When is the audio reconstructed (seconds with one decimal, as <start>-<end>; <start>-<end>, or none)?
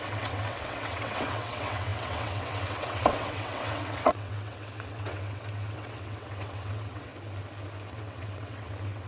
0.0-7.1; 7.9-9.1